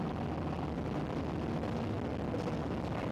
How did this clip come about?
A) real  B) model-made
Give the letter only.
A